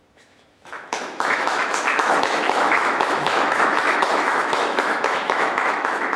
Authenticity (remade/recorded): remade